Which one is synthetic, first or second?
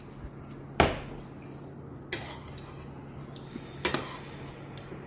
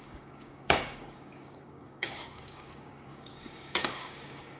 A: second